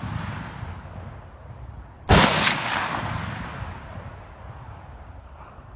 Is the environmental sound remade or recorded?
recorded